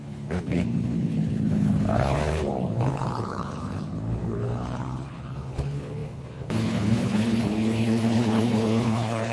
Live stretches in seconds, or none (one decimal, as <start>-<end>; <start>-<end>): none